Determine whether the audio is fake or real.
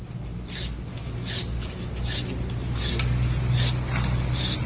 real